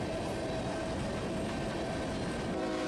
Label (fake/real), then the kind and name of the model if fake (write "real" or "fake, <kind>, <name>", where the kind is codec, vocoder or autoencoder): real